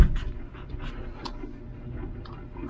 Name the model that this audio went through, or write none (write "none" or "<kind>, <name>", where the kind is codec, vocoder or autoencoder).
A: none